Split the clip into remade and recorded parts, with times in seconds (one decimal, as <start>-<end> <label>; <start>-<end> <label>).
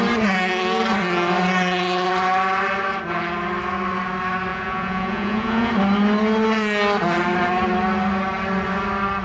0.0-4.5 recorded; 4.5-5.7 remade; 5.7-9.2 recorded